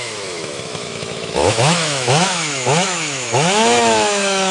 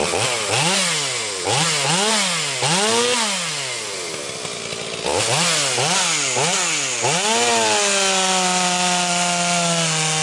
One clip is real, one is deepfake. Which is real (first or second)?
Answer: second